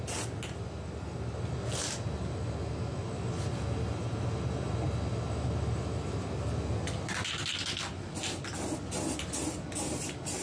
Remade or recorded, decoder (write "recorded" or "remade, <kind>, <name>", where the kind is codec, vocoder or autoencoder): recorded